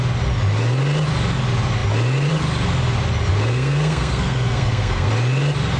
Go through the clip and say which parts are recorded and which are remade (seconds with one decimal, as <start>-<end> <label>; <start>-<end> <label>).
0.0-3.3 recorded; 3.3-5.1 remade; 5.1-5.8 recorded

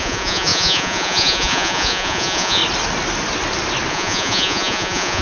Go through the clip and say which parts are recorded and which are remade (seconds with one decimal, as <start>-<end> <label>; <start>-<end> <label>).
0.0-2.6 remade; 2.6-3.9 recorded; 3.9-5.2 remade

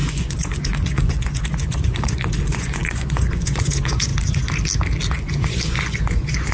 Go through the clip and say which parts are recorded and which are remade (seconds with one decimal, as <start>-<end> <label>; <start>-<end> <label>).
0.0-4.1 remade; 4.1-5.1 recorded; 5.1-6.5 remade